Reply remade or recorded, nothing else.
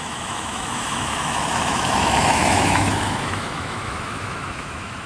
remade